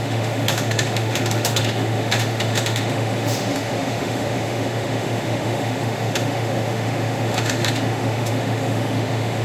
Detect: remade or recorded remade